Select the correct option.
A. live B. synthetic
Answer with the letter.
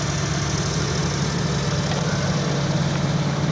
A